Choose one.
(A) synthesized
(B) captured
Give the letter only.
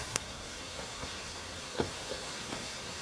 A